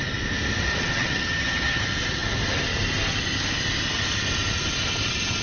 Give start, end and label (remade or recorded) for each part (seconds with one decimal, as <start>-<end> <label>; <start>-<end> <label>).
0.0-0.7 recorded; 0.7-1.8 remade; 1.8-5.4 recorded